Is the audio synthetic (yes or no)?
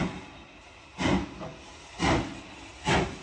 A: no